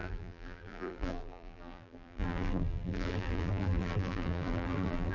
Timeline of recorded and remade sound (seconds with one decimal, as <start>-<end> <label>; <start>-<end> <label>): 0.0-5.1 remade